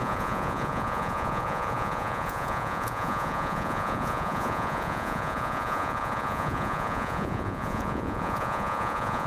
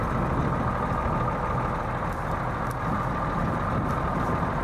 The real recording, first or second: second